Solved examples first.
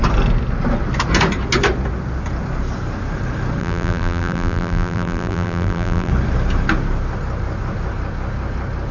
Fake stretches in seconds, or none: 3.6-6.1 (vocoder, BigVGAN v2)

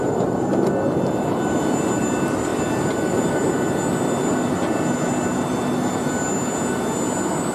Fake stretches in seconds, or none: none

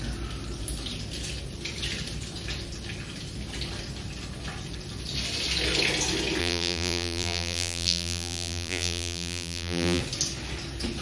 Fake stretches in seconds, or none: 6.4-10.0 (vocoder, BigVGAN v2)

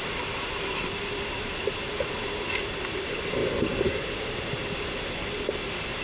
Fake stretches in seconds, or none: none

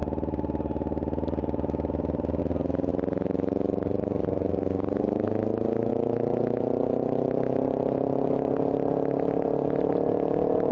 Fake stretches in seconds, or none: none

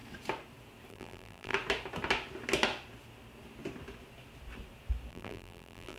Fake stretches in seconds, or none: 0.9-1.5 (vocoder, BigVGAN v2); 5.1-6.0